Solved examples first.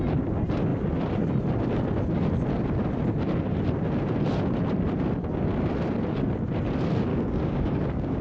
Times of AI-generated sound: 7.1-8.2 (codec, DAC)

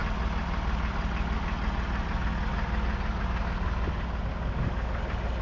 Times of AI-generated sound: 4.3-5.0 (codec, DAC)

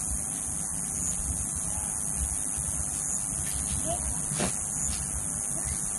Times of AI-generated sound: none